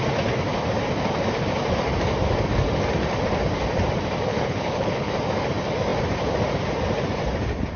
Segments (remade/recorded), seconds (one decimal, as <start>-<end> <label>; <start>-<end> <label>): 0.0-4.3 recorded; 4.3-5.1 remade; 5.1-7.8 recorded

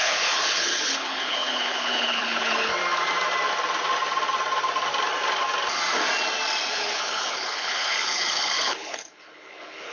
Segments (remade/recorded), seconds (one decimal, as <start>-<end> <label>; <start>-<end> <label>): 0.0-2.7 remade; 2.7-6.7 recorded; 6.7-9.9 remade

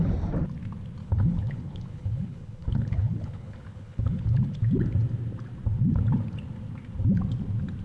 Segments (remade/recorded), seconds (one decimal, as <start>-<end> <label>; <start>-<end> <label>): 0.0-1.0 recorded; 1.0-4.5 remade; 4.5-7.8 recorded

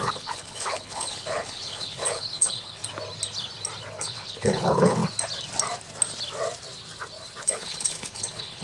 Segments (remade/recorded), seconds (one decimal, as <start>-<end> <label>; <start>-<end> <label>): 0.0-2.8 remade; 2.8-4.0 recorded; 4.0-5.0 remade; 5.0-7.4 recorded; 7.4-8.6 remade